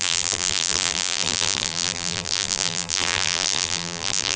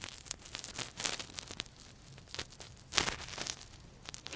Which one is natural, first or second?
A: second